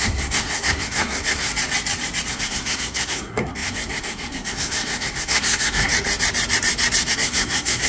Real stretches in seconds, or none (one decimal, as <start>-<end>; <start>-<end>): 1.5-2.3; 5.9-7.1